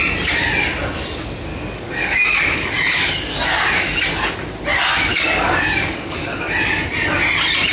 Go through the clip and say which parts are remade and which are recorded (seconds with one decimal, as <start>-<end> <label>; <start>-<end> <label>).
0.0-1.5 recorded; 1.5-2.7 remade; 2.7-5.1 recorded; 5.1-6.4 remade; 6.4-7.7 recorded